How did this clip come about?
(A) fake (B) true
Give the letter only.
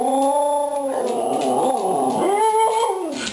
B